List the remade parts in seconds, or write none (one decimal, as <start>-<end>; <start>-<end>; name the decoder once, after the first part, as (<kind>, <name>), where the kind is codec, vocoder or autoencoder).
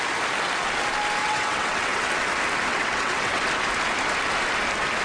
1.2-2.1 (vocoder, WaveNeXt); 2.7-3.4